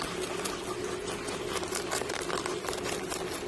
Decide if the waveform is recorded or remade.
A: recorded